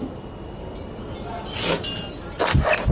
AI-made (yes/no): no